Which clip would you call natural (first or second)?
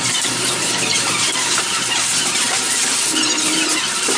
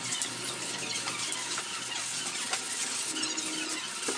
second